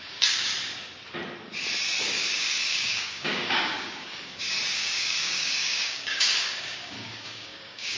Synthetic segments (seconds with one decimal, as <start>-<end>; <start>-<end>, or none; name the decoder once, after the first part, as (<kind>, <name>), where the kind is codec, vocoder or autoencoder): 0.0-0.5 (codec, DAC); 2.0-8.0